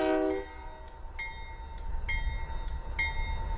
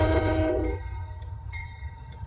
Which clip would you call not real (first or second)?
second